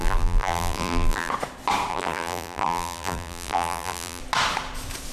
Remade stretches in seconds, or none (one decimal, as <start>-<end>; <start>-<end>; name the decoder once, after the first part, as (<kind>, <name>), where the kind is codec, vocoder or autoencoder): 0.0-1.3 (vocoder, BigVGAN v2); 1.9-4.2